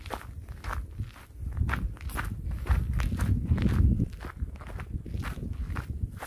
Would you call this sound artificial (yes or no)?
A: no